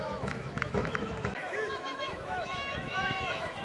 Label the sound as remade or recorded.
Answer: remade